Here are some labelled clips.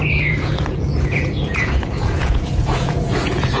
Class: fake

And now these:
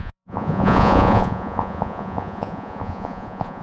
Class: fake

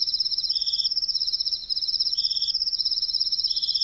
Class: fake